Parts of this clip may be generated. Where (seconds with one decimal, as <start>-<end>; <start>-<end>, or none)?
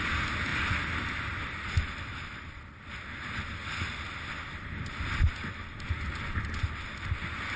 none